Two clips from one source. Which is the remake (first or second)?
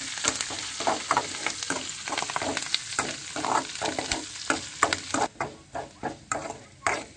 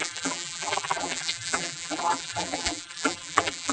second